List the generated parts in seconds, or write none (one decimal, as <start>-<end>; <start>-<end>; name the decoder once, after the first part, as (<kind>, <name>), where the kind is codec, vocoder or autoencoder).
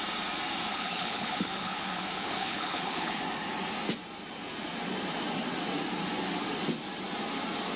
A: 0.7-3.2 (codec, HILCodec)